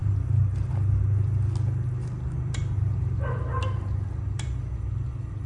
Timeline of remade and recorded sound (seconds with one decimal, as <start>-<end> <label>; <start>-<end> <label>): 0.0-5.5 recorded